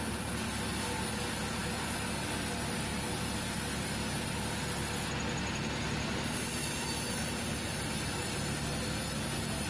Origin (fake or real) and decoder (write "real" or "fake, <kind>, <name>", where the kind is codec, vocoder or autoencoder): real